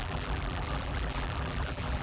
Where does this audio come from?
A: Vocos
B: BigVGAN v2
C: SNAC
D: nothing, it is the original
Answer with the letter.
B